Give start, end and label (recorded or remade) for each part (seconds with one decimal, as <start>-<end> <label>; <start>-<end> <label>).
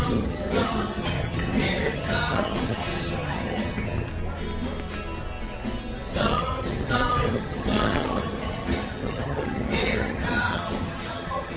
0.0-4.1 remade; 4.1-6.1 recorded; 6.1-11.6 remade